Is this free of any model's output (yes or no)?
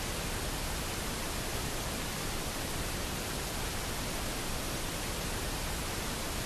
yes